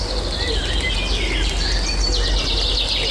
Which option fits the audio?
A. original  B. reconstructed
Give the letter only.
A